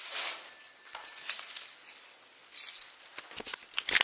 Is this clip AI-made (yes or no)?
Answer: no